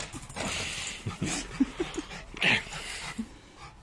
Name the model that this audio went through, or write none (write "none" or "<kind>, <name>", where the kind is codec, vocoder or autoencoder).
none